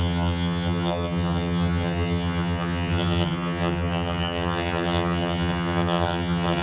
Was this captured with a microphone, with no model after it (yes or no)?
no